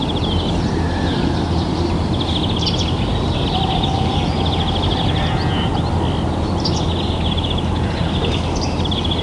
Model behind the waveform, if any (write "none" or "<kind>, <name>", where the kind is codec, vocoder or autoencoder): none